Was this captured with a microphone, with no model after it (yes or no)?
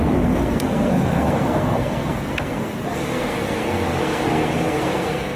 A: no